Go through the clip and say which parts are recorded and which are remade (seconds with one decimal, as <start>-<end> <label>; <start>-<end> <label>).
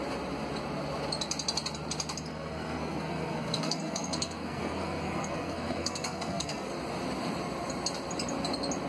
0.0-2.3 recorded; 2.3-6.7 remade; 6.7-8.9 recorded